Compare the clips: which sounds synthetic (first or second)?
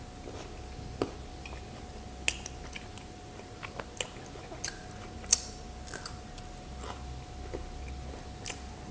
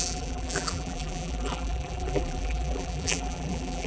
second